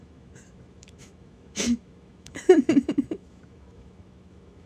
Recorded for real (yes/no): no